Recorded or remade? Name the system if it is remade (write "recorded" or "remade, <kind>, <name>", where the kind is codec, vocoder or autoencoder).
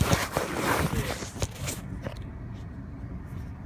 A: remade, vocoder, BigVGAN v2